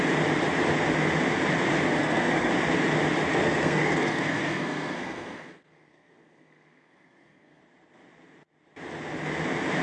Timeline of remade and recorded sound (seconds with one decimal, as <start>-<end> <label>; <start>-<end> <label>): 0.0-2.0 recorded; 2.0-2.5 remade; 2.5-3.3 recorded; 3.3-7.6 remade; 7.6-9.8 recorded